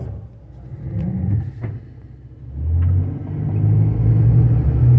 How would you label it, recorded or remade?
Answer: recorded